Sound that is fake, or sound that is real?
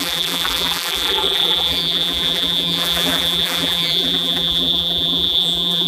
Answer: fake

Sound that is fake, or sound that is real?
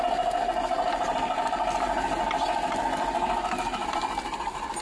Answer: real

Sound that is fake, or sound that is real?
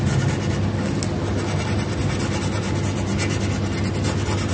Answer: real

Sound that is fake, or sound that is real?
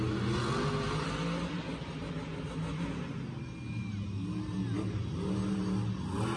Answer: real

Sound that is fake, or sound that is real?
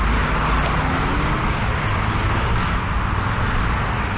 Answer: real